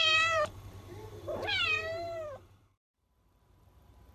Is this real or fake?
fake